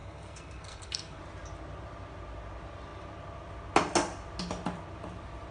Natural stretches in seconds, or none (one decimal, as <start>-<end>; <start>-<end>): 1.2-5.5